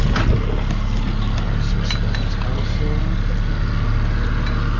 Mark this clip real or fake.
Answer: real